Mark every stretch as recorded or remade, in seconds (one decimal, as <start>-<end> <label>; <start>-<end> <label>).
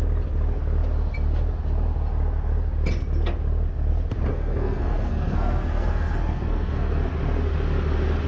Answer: 0.0-4.3 recorded; 4.3-7.1 remade; 7.1-8.3 recorded